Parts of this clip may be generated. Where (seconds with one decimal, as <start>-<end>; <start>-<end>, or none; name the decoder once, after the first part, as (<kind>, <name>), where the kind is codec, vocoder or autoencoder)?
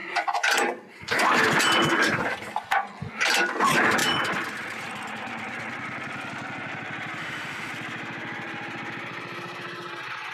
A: 7.2-7.7 (autoencoder, DAC-VAE)